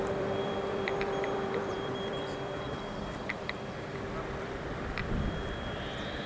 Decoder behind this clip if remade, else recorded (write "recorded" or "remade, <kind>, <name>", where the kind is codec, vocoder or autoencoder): remade, vocoder, BigVGAN v2